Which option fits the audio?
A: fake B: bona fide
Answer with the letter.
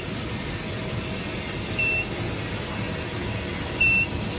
B